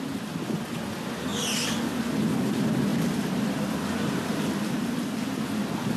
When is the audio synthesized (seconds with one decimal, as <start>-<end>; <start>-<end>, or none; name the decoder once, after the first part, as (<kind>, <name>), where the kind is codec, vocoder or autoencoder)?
2.9-5.4 (vocoder, BigVGAN v2)